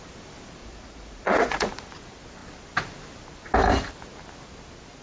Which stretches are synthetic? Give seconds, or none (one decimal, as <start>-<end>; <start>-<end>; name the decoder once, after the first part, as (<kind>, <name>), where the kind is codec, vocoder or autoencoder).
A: 0.6-1.7 (vocoder, Vocos)

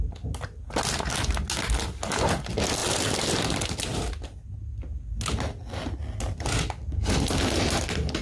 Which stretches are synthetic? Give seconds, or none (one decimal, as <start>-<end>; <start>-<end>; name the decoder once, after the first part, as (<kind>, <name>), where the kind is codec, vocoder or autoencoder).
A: none